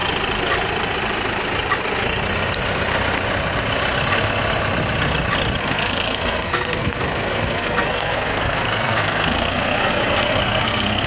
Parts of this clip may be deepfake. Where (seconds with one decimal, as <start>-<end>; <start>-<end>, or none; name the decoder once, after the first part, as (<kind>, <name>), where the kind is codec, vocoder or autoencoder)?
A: 5.6-11.1 (codec, SNAC)